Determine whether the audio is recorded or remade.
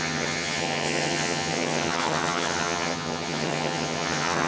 remade